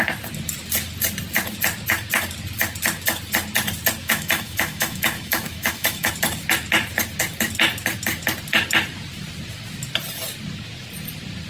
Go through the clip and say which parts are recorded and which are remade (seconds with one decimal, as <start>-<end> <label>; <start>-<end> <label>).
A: 0.0-4.0 recorded; 4.0-6.1 remade; 6.1-11.5 recorded